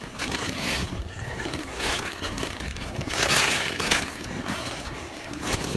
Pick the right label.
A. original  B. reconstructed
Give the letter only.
B